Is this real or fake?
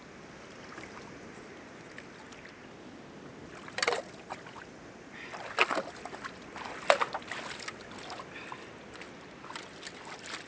real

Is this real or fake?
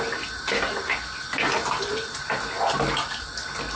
real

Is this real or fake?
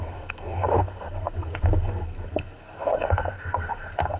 fake